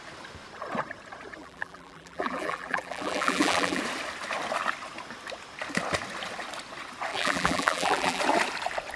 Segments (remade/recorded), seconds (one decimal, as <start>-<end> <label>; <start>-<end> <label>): 0.0-1.4 recorded; 1.4-3.8 remade; 3.8-7.1 recorded; 7.1-8.2 remade; 8.2-9.0 recorded